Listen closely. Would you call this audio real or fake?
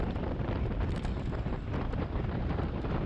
fake